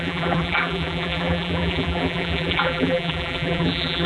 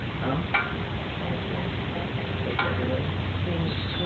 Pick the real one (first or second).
second